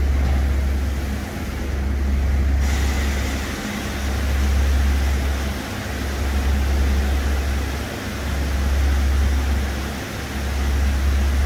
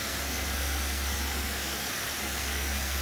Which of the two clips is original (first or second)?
first